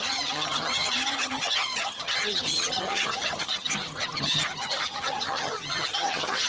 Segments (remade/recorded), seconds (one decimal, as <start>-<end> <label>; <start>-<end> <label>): 0.0-6.5 remade